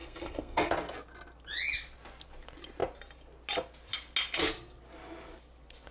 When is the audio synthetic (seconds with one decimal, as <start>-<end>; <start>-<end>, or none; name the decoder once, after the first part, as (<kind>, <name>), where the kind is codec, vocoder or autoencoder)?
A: 0.0-0.7 (codec, SNAC)